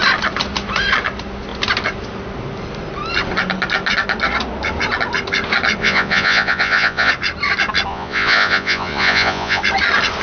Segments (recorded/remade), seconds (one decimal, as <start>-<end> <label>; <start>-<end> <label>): 0.0-5.8 recorded; 5.8-7.1 remade; 7.1-7.9 recorded; 7.9-9.6 remade; 9.6-10.2 recorded